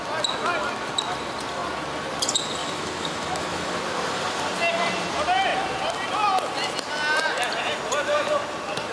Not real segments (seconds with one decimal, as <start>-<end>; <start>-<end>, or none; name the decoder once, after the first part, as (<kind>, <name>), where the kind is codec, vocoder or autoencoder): 2.6-3.8 (autoencoder, DAC-VAE)